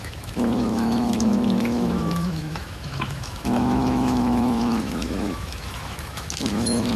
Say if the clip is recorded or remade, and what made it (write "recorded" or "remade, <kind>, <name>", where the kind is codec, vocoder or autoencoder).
remade, autoencoder, DAC-VAE